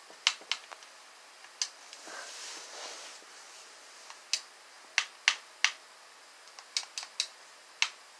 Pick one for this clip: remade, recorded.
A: recorded